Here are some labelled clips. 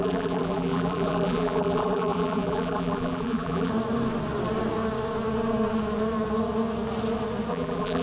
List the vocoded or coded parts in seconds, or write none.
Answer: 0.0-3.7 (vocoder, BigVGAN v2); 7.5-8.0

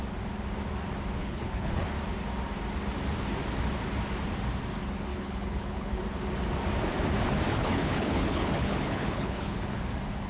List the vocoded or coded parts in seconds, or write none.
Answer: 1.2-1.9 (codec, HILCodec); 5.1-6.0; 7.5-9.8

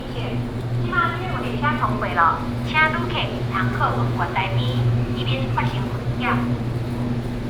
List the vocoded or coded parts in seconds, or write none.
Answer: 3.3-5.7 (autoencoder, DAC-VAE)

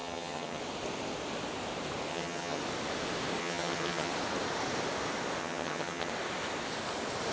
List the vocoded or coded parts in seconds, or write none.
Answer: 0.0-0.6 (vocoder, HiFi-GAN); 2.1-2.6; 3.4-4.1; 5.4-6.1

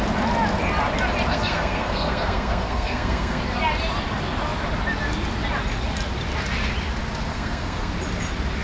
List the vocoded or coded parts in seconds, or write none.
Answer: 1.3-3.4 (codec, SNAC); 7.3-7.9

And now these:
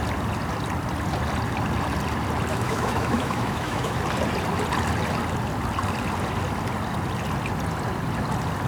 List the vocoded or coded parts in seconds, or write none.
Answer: 2.5-4.0 (autoencoder, DAC-VAE)